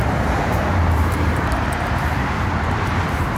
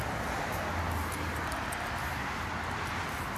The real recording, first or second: second